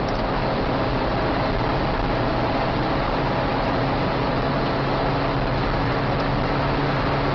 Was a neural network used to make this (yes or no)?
no